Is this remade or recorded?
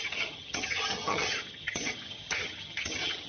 remade